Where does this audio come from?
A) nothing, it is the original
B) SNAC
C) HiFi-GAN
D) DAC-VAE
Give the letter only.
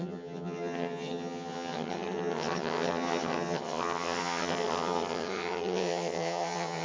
C